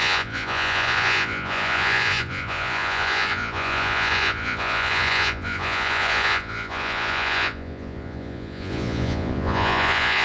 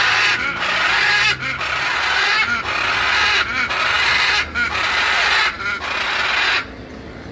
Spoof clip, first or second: first